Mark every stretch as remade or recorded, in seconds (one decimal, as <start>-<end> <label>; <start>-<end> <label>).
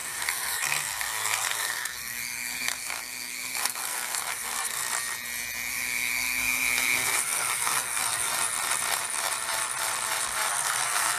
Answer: 0.0-4.8 remade; 4.8-5.7 recorded; 5.7-8.3 remade; 8.3-10.5 recorded; 10.5-11.2 remade